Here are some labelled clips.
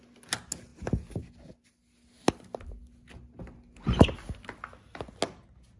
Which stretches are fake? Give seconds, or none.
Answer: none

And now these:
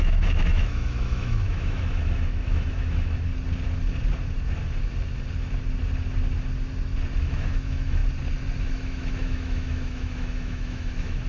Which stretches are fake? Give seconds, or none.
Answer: 0.0-3.3 (autoencoder, DAC-VAE); 7.2-8.0; 8.6-11.3

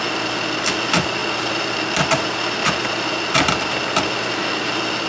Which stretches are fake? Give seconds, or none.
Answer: none